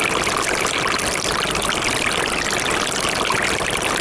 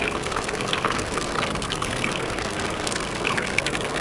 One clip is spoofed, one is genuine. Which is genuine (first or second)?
first